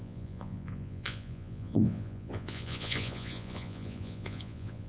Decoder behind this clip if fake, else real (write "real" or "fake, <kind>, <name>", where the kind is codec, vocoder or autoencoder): fake, vocoder, Vocos